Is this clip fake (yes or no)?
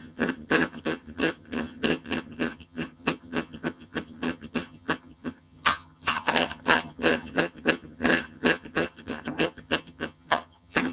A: yes